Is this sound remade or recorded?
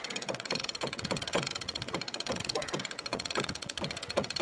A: remade